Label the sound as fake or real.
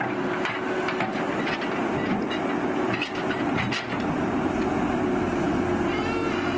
real